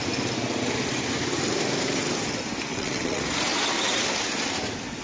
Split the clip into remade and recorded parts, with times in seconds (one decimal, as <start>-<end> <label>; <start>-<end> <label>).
0.0-2.7 recorded; 2.7-3.2 remade; 3.2-5.0 recorded